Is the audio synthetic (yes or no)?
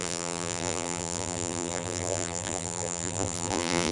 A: yes